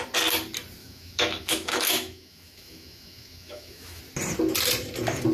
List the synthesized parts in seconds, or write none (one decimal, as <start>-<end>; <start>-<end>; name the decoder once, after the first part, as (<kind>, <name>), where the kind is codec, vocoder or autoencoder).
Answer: 0.8-4.0 (autoencoder, DAC-VAE)

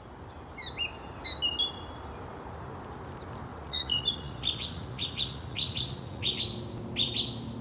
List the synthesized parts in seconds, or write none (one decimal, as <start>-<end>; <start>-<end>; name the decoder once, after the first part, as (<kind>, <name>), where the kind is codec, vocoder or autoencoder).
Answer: 3.5-6.4 (vocoder, Vocos)

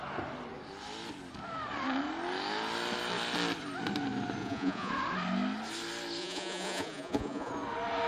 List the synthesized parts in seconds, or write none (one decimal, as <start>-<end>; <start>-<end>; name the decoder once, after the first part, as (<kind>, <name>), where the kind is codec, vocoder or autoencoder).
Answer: 4.4-4.9 (vocoder, Vocos); 6.2-7.5

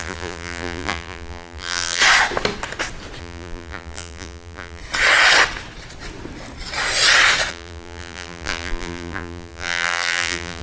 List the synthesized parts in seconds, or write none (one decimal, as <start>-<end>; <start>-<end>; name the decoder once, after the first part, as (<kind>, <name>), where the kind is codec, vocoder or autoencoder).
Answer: 0.0-2.0 (vocoder, BigVGAN v2); 3.2-4.8; 7.5-10.6

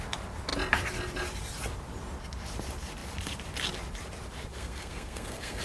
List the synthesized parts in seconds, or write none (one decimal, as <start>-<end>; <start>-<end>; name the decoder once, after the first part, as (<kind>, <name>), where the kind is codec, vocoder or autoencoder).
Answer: 4.5-5.6 (codec, SNAC)

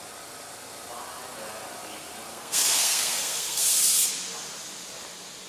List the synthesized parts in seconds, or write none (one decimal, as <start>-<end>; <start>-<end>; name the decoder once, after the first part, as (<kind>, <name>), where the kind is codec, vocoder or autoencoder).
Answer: 2.3-4.1 (codec, SNAC)

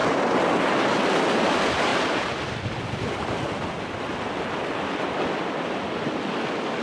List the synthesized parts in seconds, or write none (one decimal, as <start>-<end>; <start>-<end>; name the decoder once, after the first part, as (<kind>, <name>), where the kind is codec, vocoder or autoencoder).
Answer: none